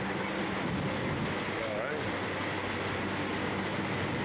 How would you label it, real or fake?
real